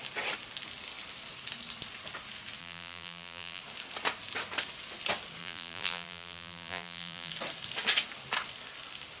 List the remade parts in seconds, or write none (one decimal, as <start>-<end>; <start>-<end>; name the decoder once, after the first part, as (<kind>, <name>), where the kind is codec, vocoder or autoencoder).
2.6-3.6 (vocoder, BigVGAN v2); 5.4-7.3